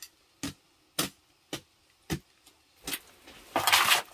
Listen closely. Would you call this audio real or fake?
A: real